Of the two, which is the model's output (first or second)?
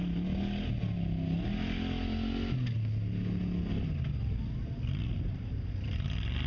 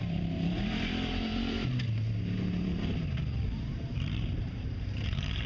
second